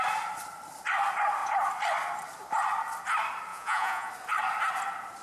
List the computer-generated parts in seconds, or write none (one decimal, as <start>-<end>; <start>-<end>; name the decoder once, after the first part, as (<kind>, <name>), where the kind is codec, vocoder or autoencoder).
3.5-4.1 (vocoder, Vocos)